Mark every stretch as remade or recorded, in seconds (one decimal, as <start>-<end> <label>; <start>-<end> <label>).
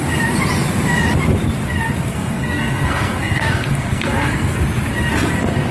0.0-2.1 recorded; 2.1-4.6 remade; 4.6-5.7 recorded